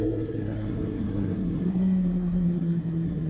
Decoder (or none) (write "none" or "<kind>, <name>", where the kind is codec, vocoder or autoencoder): codec, SNAC